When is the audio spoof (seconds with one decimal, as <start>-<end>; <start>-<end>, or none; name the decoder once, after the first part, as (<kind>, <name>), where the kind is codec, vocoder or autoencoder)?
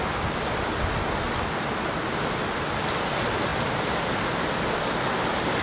3.5-4.9 (vocoder, BigVGAN v2)